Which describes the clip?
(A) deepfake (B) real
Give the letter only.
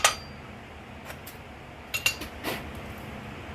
B